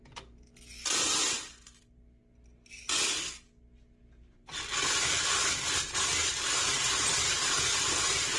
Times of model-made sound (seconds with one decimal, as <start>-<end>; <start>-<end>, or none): none